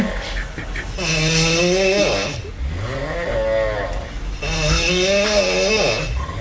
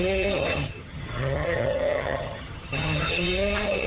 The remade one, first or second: second